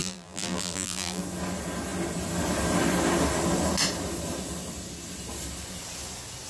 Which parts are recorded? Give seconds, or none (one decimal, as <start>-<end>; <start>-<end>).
1.2-6.5